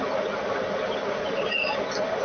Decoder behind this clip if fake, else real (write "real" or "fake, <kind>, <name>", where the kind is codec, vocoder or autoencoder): real